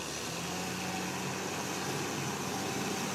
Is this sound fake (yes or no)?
no